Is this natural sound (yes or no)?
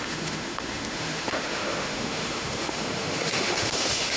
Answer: no